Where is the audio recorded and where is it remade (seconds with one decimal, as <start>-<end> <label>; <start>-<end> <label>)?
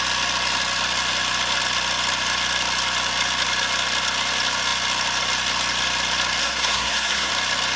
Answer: 0.0-6.4 recorded; 6.4-7.3 remade; 7.3-7.8 recorded